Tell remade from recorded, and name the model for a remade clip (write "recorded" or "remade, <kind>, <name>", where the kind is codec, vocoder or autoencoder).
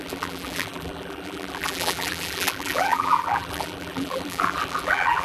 remade, vocoder, BigVGAN v2